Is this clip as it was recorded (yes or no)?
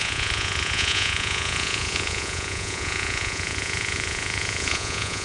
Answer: no